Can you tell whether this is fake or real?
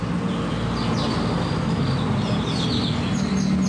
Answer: real